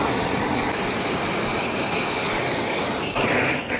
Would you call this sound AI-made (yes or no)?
no